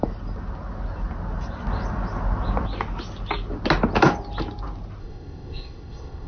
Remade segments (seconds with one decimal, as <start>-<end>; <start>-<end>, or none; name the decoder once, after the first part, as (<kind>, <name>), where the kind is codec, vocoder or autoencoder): 5.0-6.3 (codec, ZipCodec)